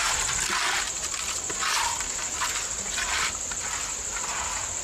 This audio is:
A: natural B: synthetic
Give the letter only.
B